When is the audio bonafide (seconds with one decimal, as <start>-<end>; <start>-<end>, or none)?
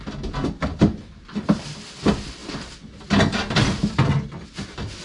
0.0-5.0